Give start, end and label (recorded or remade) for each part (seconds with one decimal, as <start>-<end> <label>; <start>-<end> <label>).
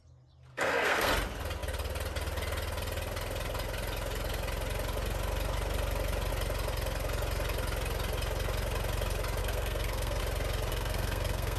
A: 0.0-0.5 recorded; 0.5-1.1 remade; 1.1-9.4 recorded; 9.4-10.2 remade; 10.2-10.7 recorded; 10.7-11.6 remade